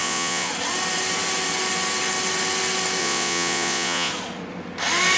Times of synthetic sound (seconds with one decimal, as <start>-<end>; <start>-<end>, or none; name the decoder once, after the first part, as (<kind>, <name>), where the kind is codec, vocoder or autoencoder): 0.0-0.5 (vocoder, Vocos); 3.0-4.1